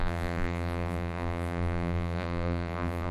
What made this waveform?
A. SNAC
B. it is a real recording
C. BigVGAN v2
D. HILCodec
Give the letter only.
C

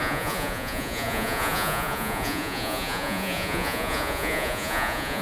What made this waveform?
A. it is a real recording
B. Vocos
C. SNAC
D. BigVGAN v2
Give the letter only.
B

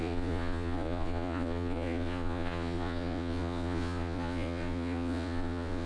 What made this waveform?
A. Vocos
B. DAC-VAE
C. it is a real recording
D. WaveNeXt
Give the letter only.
A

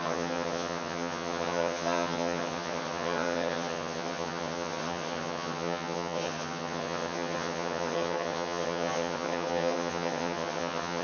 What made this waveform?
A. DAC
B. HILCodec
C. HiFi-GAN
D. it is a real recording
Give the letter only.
C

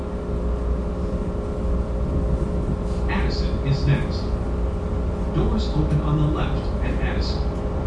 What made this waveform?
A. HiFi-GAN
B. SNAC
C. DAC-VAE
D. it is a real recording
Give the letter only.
D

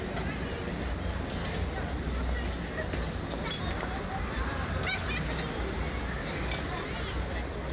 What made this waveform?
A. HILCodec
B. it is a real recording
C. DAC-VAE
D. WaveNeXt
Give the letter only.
B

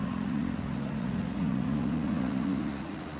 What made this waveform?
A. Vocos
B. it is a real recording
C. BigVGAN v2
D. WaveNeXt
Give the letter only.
A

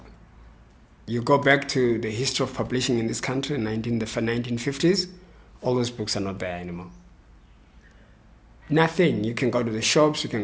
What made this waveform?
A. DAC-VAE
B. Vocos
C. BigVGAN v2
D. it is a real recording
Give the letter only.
D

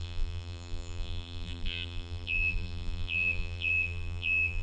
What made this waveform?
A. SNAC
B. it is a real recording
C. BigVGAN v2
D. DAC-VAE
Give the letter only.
C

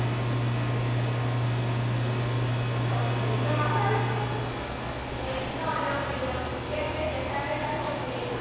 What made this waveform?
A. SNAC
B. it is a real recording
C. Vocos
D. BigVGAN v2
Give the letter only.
B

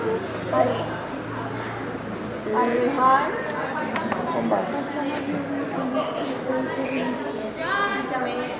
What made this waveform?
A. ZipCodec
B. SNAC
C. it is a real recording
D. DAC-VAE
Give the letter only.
C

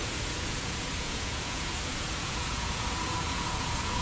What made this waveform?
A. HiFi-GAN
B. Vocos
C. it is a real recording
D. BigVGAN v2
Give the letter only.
B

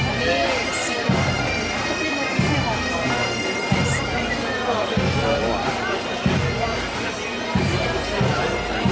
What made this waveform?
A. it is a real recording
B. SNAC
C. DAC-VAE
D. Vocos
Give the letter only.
A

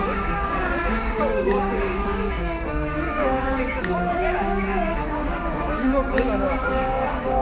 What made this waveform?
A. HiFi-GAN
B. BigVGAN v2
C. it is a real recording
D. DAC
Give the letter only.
D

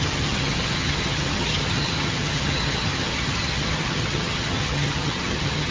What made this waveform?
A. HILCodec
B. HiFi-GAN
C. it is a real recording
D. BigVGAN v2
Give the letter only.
B